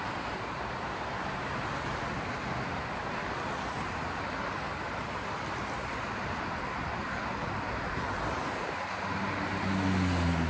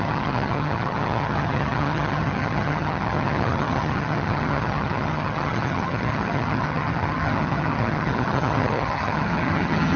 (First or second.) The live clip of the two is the first